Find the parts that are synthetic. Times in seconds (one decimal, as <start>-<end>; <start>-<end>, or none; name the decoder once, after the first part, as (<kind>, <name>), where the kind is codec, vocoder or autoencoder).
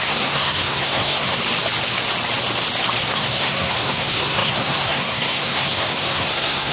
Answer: 0.0-1.4 (codec, SNAC); 3.1-6.7